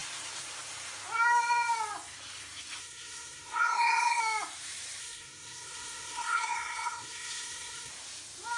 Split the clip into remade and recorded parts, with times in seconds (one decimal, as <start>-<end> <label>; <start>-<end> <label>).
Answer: 0.0-2.8 recorded; 2.8-4.2 remade; 4.2-5.0 recorded; 5.0-7.9 remade; 7.9-8.6 recorded